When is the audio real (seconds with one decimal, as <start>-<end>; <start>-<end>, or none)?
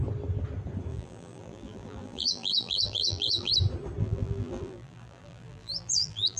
0.0-0.9; 3.5-4.0